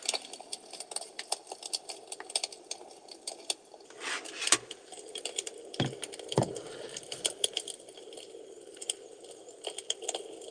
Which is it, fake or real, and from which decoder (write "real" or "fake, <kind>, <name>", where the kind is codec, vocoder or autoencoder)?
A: real